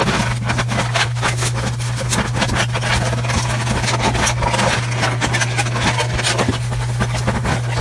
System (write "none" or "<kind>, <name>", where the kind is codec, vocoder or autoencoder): none